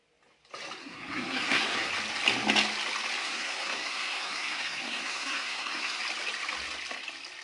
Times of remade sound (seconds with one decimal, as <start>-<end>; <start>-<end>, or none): 0.8-1.9; 3.2-6.0